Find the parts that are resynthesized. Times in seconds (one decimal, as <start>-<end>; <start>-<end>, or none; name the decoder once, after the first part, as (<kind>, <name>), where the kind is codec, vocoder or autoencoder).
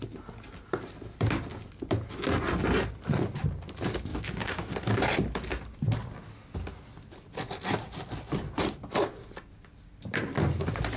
4.1-4.7 (autoencoder, DAC-VAE)